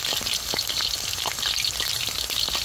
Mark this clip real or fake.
real